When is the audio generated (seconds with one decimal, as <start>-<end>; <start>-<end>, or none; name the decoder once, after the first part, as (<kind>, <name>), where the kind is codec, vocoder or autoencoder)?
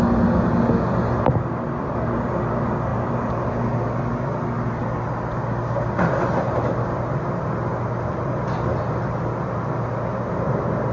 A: none